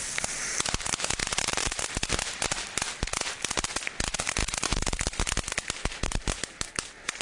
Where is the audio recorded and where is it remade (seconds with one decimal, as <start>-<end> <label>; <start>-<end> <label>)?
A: 0.0-7.2 recorded